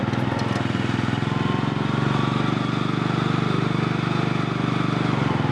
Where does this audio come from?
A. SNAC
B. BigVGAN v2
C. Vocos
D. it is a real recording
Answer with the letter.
D